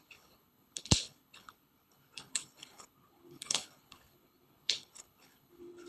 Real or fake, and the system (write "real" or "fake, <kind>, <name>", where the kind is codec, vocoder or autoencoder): fake, codec, HILCodec